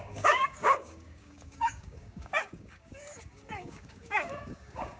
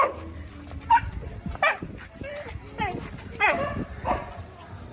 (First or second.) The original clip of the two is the second